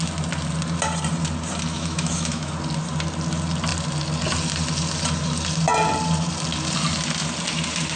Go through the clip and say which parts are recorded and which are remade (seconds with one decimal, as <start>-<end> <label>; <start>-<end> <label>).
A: 0.0-1.7 recorded; 1.7-2.5 remade; 2.5-8.0 recorded